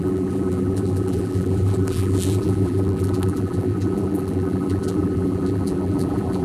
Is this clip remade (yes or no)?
yes